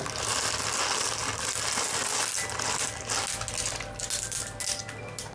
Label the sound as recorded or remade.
recorded